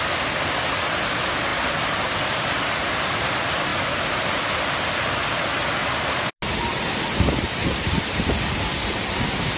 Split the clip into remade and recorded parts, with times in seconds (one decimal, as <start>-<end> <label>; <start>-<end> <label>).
0.0-1.5 recorded; 1.5-2.6 remade; 2.6-3.7 recorded; 3.7-4.9 remade; 4.9-6.7 recorded; 6.7-9.0 remade; 9.0-9.6 recorded